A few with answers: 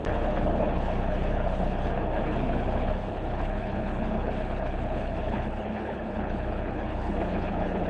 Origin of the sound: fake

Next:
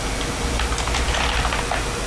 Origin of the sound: real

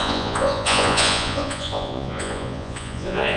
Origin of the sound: fake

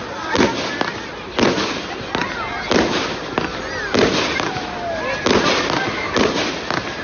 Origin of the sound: real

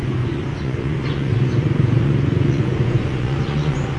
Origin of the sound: fake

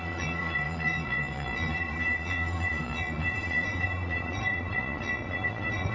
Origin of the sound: fake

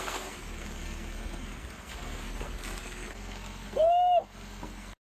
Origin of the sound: fake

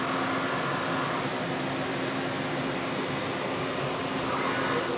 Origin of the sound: real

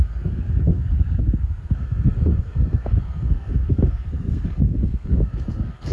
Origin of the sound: fake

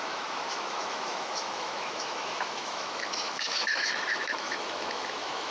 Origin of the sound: fake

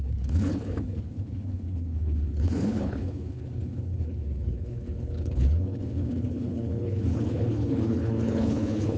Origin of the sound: fake